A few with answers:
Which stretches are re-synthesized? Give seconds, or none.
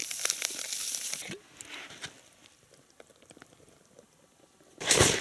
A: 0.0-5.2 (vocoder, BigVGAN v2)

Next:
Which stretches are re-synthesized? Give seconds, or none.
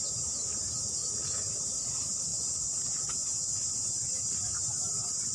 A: none